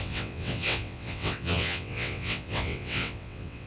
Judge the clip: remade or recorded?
remade